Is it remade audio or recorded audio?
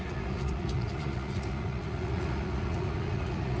remade